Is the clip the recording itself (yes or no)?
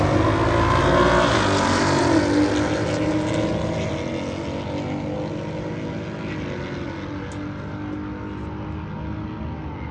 yes